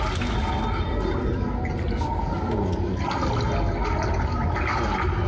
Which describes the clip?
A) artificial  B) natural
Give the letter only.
B